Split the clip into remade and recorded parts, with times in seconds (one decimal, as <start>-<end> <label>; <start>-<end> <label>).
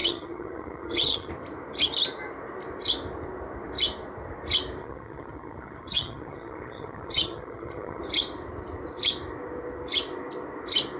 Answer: 0.0-1.3 remade; 1.3-4.8 recorded; 4.8-8.0 remade; 8.0-11.0 recorded